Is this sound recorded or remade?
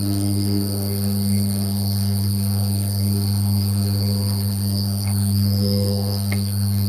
remade